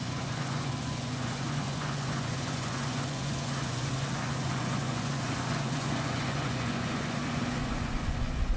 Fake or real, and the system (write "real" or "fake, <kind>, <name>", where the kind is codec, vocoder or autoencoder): fake, vocoder, Vocos